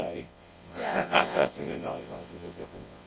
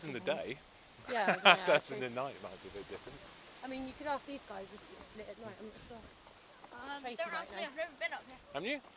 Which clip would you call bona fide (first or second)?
second